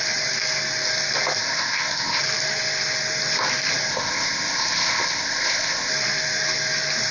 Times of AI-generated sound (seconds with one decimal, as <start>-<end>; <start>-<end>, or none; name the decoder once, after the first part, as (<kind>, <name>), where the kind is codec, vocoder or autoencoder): 1.4-2.2 (codec, ZipCodec); 3.9-5.9